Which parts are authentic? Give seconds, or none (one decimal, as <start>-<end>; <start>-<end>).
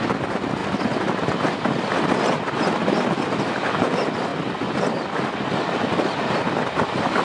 0.0-0.6; 3.8-4.3; 5.5-7.2